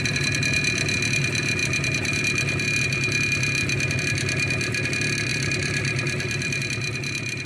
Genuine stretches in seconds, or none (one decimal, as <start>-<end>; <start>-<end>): 0.0-5.3; 6.6-7.5